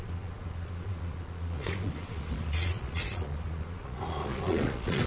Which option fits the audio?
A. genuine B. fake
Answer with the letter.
B